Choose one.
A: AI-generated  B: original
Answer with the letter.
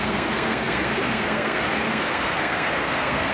A